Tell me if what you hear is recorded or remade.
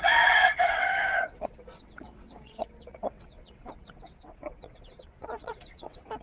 remade